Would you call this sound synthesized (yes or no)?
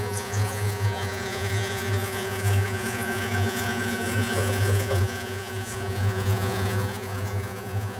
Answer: yes